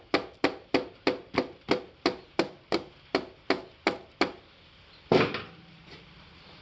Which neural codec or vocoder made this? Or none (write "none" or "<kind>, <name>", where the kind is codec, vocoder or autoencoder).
none